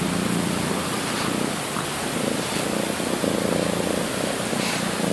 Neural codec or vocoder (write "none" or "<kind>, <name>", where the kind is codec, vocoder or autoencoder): none